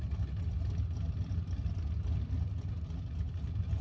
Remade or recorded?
recorded